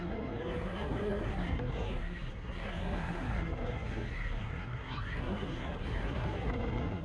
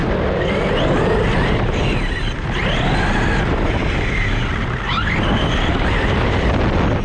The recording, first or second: second